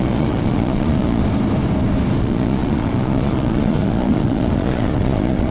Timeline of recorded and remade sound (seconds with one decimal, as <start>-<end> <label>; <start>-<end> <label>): 0.0-1.2 remade; 1.2-2.2 recorded; 2.2-5.5 remade